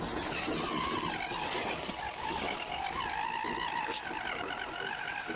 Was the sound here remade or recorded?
recorded